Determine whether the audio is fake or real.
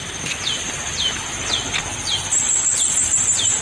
real